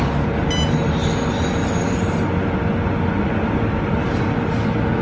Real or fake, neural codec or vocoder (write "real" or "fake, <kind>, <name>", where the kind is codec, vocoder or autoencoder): real